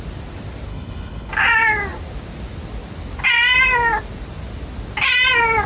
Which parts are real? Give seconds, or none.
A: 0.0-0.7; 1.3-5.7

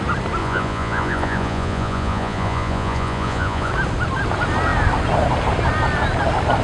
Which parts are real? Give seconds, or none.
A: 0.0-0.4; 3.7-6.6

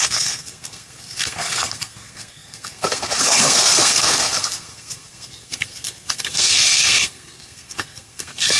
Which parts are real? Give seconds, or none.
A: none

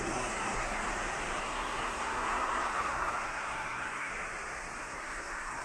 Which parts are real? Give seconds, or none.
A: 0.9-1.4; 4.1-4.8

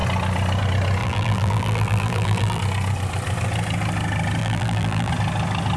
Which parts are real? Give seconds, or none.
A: 0.0-1.0; 2.6-4.4; 5.1-5.8

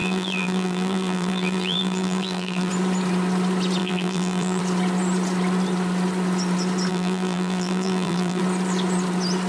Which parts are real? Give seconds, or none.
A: 2.7-3.8; 4.6-6.9; 8.4-9.5